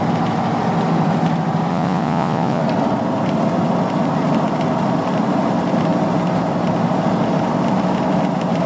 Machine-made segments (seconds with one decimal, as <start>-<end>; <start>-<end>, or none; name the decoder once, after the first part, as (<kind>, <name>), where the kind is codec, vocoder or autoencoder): 1.7-2.6 (vocoder, Vocos)